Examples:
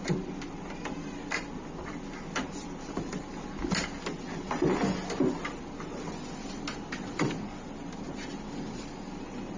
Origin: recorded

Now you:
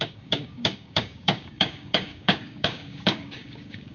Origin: remade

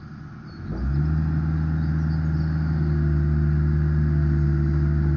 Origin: recorded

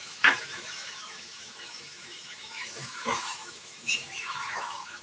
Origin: remade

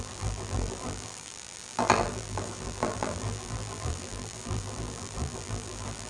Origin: remade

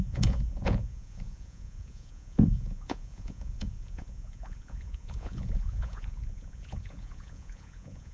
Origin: remade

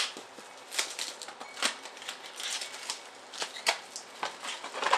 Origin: recorded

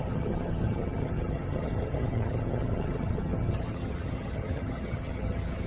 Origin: remade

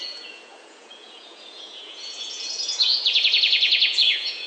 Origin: remade